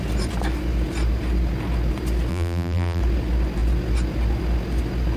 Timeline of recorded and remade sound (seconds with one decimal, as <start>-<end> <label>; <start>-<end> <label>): 0.0-2.3 recorded; 2.3-3.0 remade; 3.0-5.2 recorded